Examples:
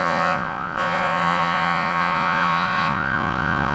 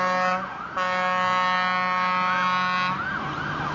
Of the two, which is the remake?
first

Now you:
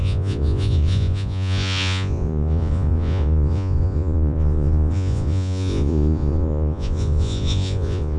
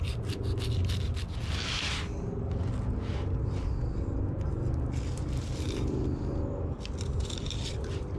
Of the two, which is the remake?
first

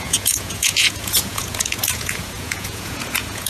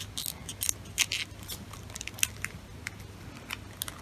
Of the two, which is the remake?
first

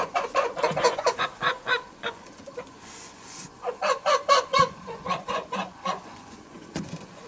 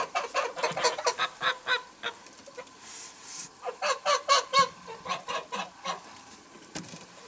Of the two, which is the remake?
first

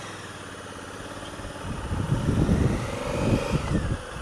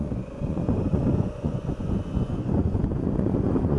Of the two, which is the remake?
second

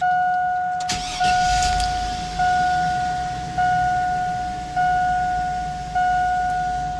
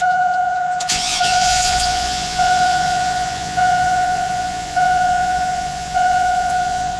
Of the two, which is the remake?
second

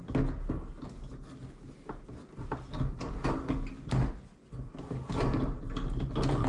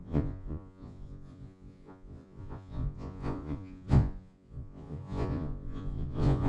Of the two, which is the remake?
second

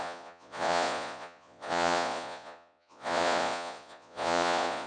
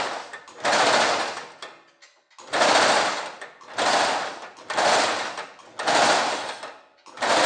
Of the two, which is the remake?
first